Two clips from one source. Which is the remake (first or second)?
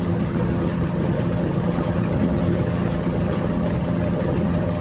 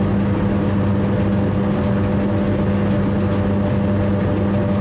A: first